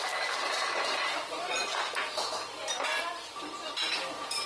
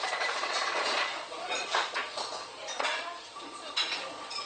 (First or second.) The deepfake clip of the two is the second